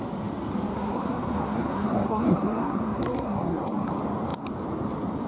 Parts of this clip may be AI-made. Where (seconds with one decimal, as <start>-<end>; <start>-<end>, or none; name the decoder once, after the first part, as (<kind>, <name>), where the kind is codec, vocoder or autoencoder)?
0.7-3.9 (codec, SNAC)